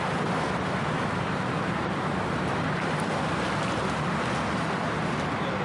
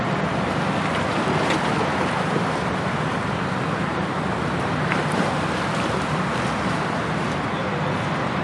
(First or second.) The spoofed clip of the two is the second